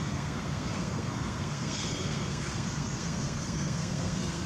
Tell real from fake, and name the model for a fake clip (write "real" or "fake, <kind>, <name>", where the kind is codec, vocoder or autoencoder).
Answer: fake, codec, SNAC